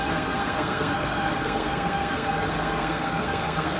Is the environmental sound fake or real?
fake